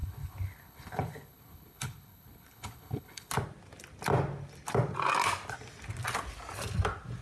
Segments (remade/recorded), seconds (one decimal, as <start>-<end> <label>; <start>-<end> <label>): 0.0-3.3 remade; 3.3-7.2 recorded